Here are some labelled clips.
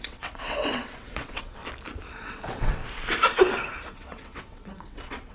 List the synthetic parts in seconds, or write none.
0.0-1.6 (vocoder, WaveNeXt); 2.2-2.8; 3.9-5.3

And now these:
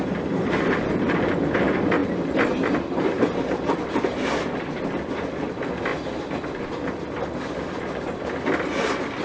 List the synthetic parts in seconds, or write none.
none

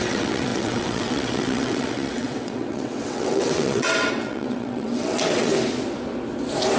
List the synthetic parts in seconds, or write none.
0.0-5.5 (vocoder, WaveNeXt)

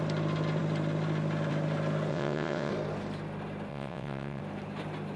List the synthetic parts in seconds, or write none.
2.1-2.7 (vocoder, WaveNeXt); 3.7-4.4

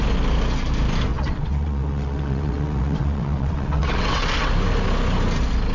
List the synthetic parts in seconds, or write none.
1.1-4.5 (vocoder, WaveNeXt)

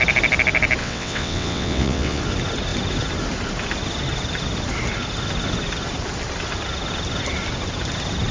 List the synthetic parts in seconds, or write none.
0.8-2.2 (vocoder, WaveNeXt)

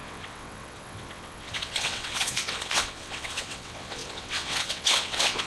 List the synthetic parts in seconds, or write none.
0.0-5.5 (vocoder, WaveNeXt)

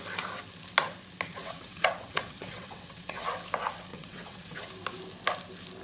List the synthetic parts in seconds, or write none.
1.4-3.3 (vocoder, WaveNeXt); 3.9-4.7